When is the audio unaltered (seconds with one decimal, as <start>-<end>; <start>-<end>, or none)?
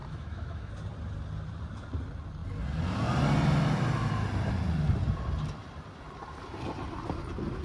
0.7-7.6